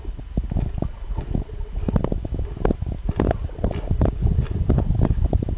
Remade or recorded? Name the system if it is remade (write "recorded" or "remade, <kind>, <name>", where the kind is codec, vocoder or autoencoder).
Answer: recorded